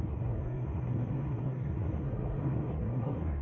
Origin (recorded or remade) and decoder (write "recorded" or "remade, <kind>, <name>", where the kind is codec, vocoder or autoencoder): remade, codec, SNAC